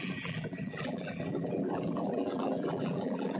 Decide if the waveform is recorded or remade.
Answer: remade